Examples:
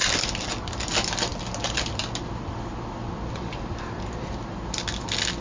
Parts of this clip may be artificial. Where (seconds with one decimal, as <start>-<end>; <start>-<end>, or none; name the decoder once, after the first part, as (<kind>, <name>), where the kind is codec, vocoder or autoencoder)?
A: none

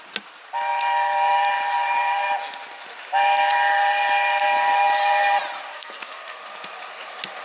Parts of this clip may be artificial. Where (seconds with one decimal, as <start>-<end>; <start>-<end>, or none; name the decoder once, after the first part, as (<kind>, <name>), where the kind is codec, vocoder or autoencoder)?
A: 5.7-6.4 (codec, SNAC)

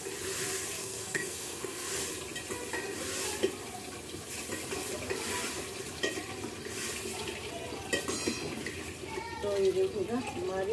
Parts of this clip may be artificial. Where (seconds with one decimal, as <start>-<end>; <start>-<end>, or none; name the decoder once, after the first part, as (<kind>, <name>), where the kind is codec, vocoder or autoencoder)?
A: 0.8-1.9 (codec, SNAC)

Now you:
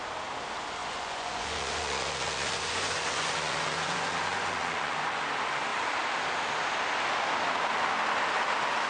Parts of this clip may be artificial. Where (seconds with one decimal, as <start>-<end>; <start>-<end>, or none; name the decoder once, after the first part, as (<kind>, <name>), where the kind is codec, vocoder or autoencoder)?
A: 0.8-5.2 (vocoder, Vocos)

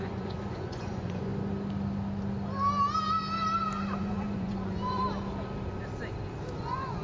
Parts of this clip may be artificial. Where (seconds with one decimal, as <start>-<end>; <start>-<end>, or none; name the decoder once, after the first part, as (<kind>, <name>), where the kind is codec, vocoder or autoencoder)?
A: 0.0-1.3 (vocoder, Vocos); 4.0-5.0; 6.6-7.0

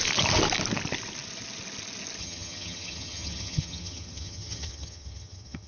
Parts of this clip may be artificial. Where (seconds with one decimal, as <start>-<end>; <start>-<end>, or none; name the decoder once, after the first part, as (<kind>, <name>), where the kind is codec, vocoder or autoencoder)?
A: 2.2-5.7 (vocoder, HiFi-GAN)